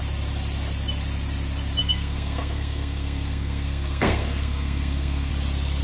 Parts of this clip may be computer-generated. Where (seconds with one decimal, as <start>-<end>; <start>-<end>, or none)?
1.8-5.3